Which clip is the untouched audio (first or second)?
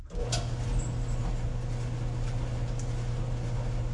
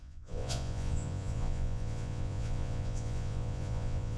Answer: first